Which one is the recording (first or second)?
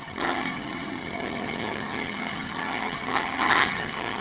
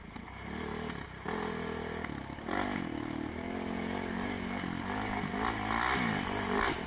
second